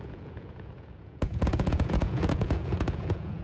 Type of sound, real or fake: fake